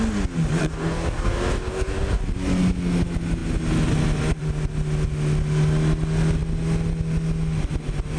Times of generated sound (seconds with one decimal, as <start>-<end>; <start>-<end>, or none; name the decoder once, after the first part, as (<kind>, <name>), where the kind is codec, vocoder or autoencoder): 0.6-2.2 (codec, DAC)